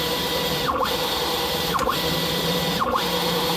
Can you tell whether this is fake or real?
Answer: fake